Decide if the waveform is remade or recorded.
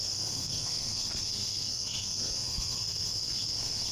remade